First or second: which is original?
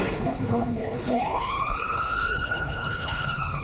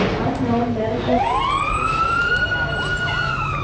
second